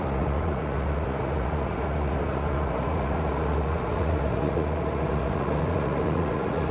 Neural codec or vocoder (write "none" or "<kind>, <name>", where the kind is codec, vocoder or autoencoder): vocoder, Vocos